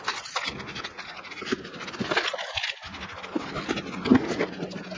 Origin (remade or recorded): recorded